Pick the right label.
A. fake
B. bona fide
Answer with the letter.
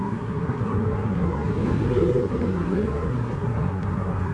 A